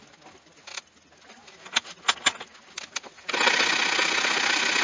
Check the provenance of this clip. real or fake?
real